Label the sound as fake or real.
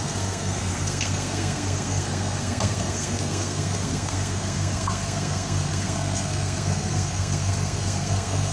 fake